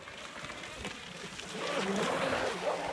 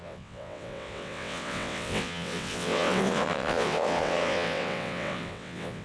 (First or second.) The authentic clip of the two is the first